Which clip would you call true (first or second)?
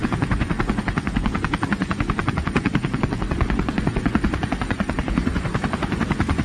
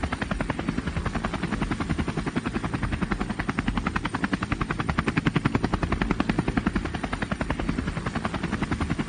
second